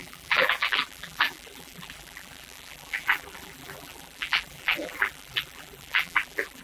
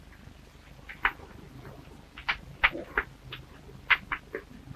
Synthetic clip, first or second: first